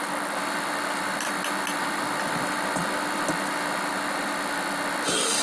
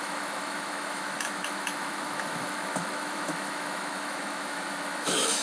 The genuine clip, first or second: first